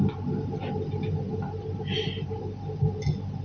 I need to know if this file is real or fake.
real